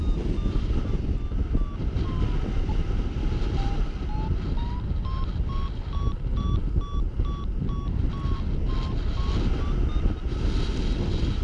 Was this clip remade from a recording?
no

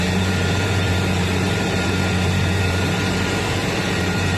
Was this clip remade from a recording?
yes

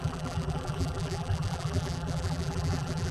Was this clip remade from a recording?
yes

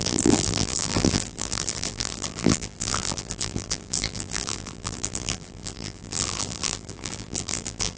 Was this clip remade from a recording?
yes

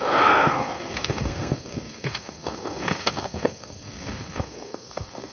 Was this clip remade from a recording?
yes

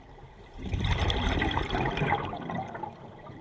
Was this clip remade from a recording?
no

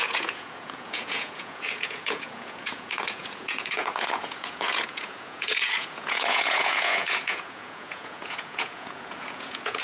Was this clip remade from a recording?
yes